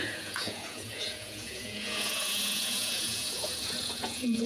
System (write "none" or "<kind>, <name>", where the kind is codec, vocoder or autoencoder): vocoder, Vocos